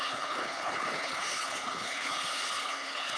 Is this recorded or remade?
remade